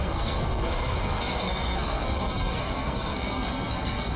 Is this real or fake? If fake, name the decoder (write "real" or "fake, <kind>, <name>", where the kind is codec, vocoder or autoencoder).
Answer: fake, codec, SNAC